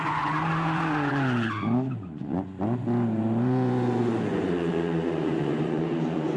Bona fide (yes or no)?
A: no